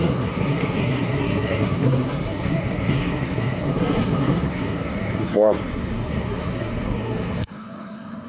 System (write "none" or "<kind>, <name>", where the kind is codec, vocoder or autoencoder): codec, SNAC